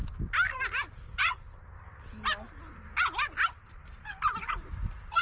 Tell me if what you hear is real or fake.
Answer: real